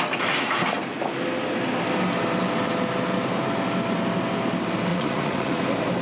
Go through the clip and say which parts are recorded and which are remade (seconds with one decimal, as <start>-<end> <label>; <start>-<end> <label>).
0.0-4.9 recorded; 4.9-5.6 remade; 5.6-6.0 recorded